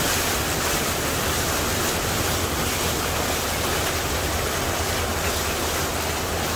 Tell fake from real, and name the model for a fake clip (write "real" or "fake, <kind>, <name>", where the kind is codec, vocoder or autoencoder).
real